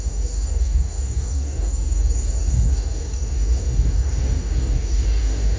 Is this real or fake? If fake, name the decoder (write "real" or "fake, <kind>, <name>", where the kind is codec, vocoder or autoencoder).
fake, codec, DAC